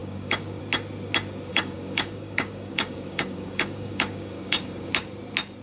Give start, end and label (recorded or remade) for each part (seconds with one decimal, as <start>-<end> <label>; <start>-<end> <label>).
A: 0.0-0.6 remade; 0.6-1.5 recorded; 1.5-4.9 remade; 4.9-5.6 recorded